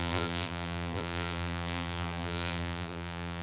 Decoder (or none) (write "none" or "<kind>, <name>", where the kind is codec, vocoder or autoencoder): vocoder, BigVGAN v2